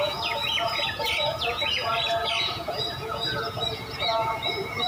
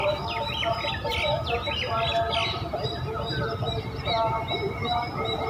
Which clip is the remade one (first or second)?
first